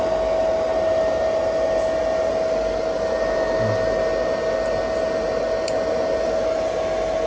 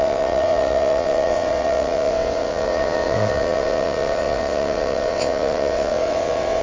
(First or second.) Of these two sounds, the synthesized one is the second